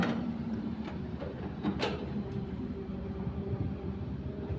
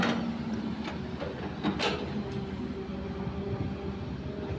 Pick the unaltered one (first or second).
second